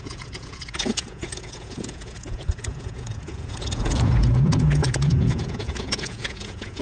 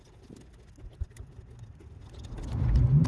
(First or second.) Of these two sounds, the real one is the second